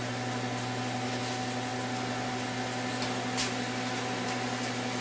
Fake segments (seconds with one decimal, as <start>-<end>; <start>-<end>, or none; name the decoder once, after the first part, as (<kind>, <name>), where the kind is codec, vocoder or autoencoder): none